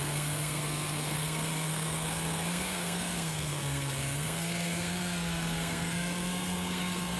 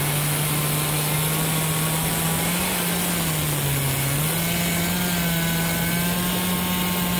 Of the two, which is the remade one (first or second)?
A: first